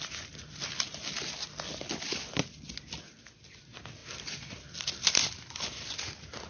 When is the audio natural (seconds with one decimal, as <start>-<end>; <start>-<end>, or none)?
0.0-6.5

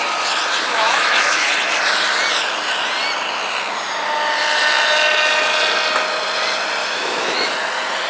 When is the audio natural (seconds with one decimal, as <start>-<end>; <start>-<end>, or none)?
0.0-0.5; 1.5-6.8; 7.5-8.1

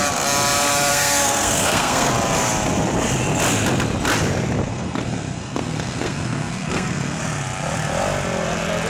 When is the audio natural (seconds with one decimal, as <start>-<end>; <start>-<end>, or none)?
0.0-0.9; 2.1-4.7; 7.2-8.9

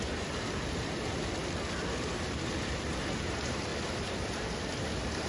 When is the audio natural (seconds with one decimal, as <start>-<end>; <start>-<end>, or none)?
1.4-2.6

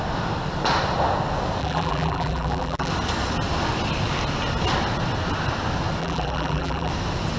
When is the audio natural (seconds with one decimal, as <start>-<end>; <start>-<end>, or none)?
0.0-1.6; 2.9-6.0; 6.9-7.4

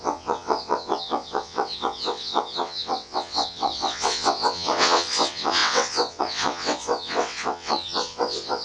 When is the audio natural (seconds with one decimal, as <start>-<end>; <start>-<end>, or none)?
none

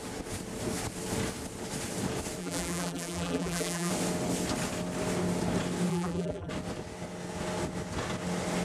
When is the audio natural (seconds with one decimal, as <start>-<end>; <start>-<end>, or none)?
0.0-2.4; 3.9-5.9; 6.5-8.6

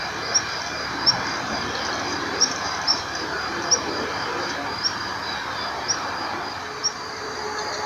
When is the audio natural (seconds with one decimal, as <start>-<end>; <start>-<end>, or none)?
0.0-2.1; 5.1-6.8; 7.4-7.9